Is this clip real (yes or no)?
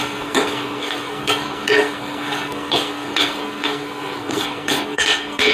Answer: no